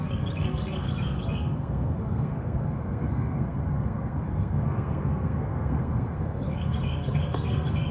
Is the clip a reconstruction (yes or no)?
yes